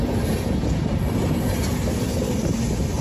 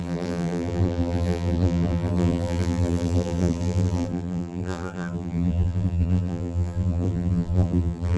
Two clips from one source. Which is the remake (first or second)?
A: second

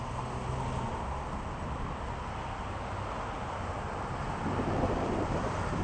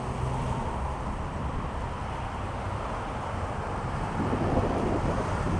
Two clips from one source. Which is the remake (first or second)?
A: second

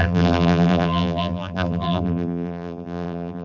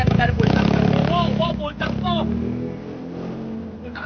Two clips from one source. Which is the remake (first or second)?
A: first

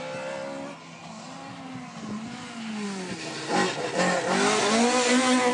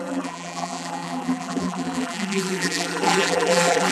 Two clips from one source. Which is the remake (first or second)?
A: second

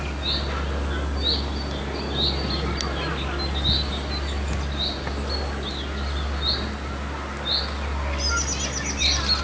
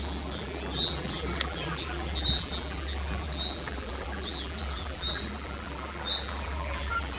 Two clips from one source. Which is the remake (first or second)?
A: second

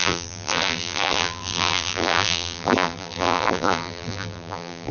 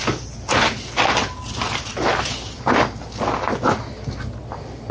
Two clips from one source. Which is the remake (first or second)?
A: first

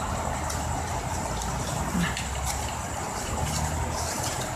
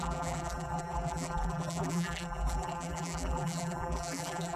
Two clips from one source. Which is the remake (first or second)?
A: second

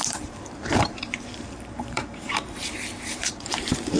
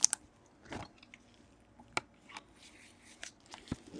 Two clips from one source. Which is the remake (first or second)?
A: first